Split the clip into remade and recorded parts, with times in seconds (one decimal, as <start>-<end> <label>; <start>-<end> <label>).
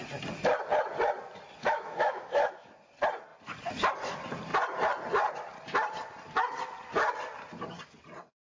0.0-1.6 recorded; 1.6-2.7 remade; 2.7-8.5 recorded